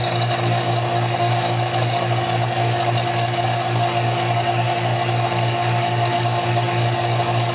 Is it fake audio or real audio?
fake